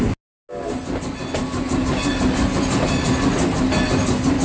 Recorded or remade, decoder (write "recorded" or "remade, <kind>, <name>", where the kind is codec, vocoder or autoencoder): recorded